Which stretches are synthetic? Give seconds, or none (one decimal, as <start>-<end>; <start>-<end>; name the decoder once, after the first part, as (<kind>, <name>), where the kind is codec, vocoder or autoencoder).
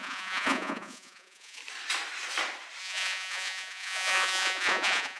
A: 0.0-1.6 (vocoder, Vocos); 2.8-5.2